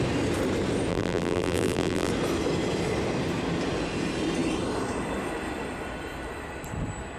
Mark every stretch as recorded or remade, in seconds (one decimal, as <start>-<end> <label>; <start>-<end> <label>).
0.0-0.9 recorded; 0.9-2.1 remade; 2.1-7.2 recorded